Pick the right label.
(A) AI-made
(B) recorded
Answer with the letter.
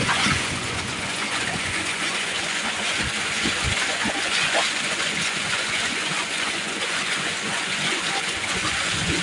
A